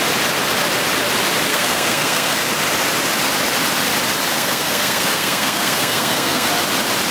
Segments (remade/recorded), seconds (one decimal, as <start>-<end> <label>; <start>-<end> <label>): 0.0-1.5 recorded; 1.5-2.5 remade; 2.5-4.3 recorded; 4.3-6.5 remade; 6.5-7.1 recorded